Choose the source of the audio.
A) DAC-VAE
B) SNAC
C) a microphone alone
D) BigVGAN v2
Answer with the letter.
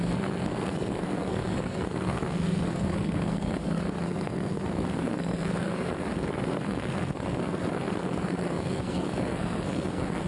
B